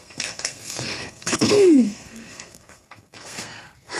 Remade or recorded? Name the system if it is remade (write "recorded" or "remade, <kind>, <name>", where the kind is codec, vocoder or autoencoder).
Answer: remade, codec, SNAC